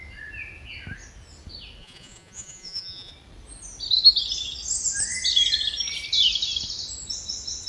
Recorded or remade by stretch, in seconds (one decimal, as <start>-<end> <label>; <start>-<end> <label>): 0.0-1.8 recorded; 1.8-3.1 remade; 3.1-7.7 recorded